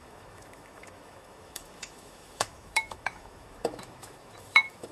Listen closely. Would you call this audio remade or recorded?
remade